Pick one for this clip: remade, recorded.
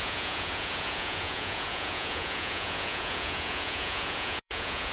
remade